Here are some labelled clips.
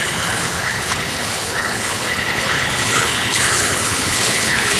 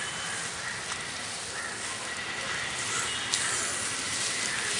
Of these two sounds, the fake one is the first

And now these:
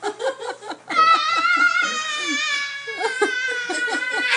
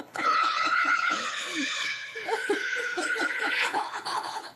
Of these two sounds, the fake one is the second